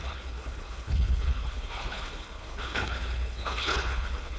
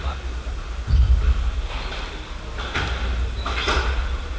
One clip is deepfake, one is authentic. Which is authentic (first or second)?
second